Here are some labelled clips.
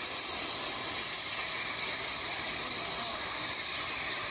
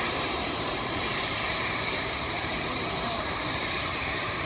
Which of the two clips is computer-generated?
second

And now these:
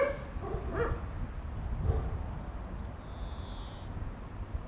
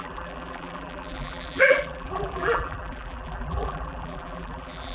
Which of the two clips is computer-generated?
second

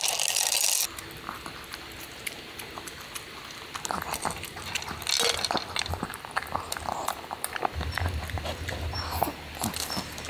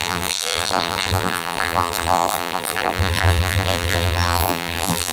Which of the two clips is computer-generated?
second